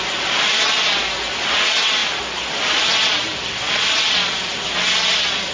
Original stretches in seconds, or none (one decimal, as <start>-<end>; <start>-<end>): 0.0-5.5

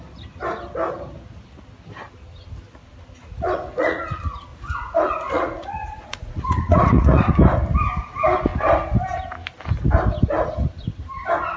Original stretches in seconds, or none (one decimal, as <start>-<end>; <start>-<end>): 0.0-3.2; 4.0-4.5; 7.3-11.6

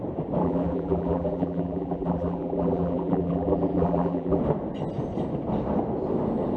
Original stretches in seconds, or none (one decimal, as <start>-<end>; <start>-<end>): 0.0-0.4; 4.4-6.6

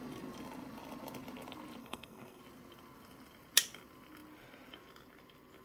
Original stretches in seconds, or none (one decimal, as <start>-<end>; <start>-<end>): 0.0-1.8; 2.4-5.6

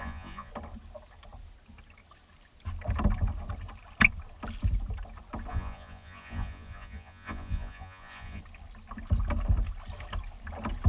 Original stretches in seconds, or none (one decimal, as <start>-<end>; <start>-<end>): 0.5-5.5; 8.4-10.9

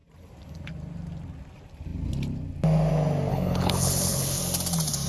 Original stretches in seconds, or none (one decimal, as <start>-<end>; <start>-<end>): 0.0-3.3; 4.4-5.1